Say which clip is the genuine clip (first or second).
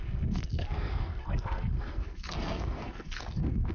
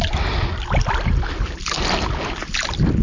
second